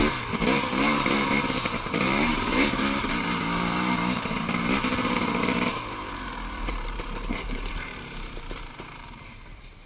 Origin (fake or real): fake